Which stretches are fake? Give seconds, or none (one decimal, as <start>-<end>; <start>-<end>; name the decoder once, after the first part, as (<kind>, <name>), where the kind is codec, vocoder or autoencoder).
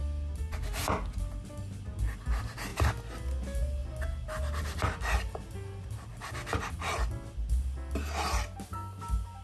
none